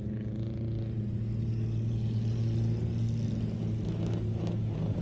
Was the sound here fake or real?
real